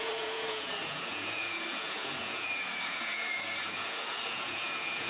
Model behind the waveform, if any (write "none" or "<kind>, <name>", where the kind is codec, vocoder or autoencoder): vocoder, Vocos